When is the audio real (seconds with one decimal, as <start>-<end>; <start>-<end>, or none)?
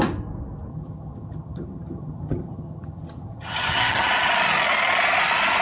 0.0-0.7; 4.1-5.6